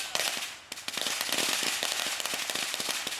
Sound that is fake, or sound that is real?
real